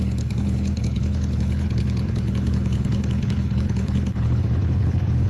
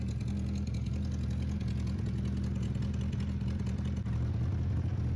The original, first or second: second